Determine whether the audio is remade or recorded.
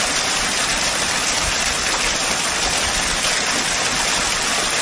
recorded